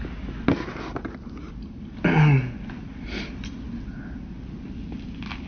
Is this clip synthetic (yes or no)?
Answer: no